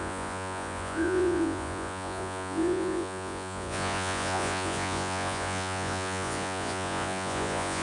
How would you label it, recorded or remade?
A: remade